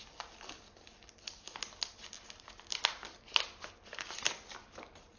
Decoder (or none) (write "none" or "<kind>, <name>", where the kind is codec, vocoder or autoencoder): none